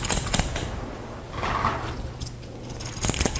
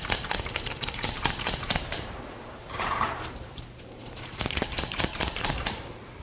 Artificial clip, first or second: second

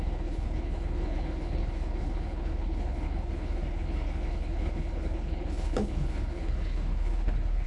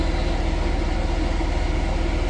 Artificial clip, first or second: first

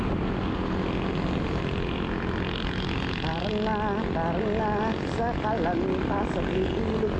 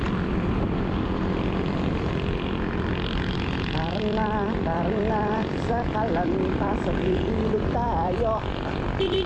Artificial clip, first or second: second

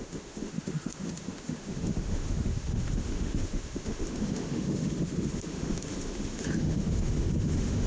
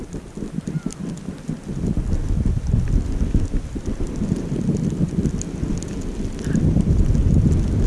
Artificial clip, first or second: first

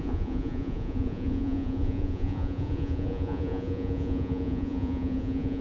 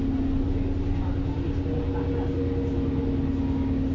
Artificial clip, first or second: first